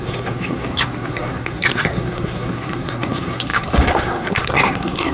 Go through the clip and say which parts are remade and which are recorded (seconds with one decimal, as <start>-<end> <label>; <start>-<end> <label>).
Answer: 0.0-5.1 remade